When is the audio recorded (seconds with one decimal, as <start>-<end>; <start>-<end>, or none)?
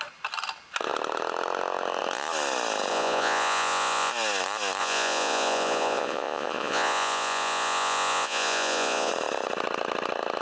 0.0-2.9; 4.1-4.8; 9.1-10.4